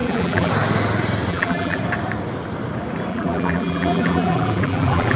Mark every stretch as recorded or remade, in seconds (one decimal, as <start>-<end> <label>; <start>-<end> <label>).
0.0-0.5 remade; 0.5-1.3 recorded; 1.3-1.8 remade; 1.8-3.1 recorded; 3.1-5.2 remade